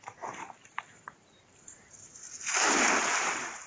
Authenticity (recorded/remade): remade